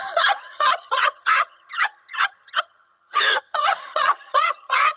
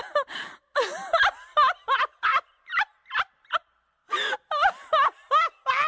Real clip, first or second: second